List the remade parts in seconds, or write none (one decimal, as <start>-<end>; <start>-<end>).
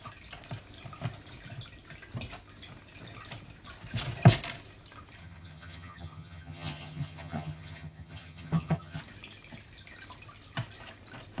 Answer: 5.2-9.0